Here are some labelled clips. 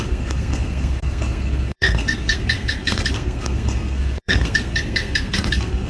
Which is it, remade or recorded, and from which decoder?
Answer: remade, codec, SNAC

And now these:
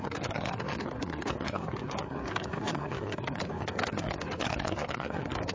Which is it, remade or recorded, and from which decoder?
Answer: remade, codec, SNAC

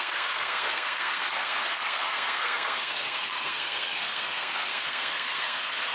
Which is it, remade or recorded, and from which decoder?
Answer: remade, codec, SNAC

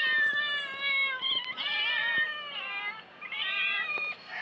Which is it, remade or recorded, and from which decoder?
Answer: recorded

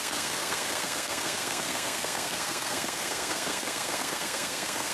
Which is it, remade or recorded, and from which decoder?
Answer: remade, codec, SNAC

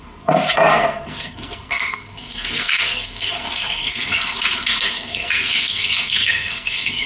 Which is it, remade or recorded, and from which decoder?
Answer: remade, codec, SNAC